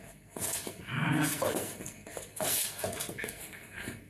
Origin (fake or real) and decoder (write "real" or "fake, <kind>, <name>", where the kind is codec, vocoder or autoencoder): fake, codec, SNAC